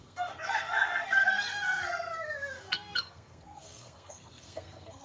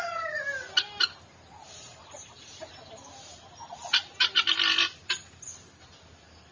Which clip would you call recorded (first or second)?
second